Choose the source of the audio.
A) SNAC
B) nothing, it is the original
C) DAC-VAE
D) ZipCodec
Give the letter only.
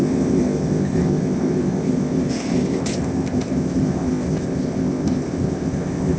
D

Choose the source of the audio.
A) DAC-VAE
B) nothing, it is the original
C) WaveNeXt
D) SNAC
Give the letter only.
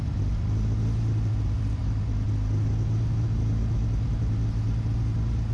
B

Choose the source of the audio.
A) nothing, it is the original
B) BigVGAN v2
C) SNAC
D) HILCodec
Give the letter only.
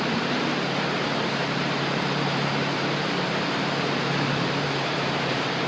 B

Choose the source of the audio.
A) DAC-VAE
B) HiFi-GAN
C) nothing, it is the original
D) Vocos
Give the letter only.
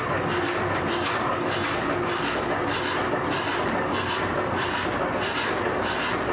C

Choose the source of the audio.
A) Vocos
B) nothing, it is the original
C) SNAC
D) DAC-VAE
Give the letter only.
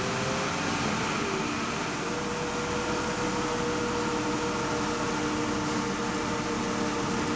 B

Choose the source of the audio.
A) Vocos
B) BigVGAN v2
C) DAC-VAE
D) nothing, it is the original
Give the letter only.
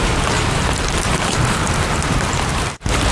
B